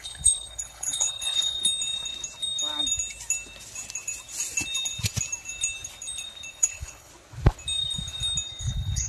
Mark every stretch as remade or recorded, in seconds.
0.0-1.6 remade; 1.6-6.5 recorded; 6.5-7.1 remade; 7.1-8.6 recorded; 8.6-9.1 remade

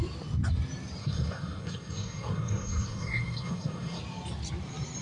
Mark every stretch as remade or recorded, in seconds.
0.0-1.0 recorded; 1.0-4.0 remade; 4.0-5.0 recorded

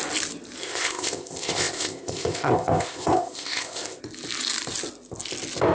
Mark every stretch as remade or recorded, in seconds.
0.0-0.6 recorded; 0.6-4.0 remade; 4.0-5.7 recorded

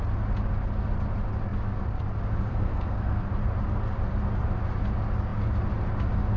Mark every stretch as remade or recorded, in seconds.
0.0-2.5 recorded; 2.5-3.3 remade; 3.3-6.4 recorded

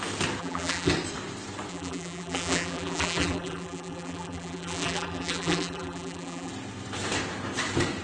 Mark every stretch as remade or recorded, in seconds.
0.0-0.4 recorded; 0.4-0.9 remade; 0.9-1.7 recorded; 1.7-6.5 remade; 6.5-8.0 recorded

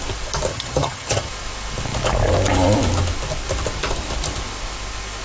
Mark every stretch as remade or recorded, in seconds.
0.0-0.5 recorded; 0.5-1.3 remade; 1.3-5.2 recorded